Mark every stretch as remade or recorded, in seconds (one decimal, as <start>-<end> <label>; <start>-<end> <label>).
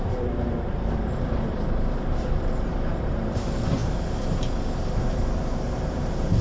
0.0-3.8 remade; 3.8-5.1 recorded; 5.1-6.4 remade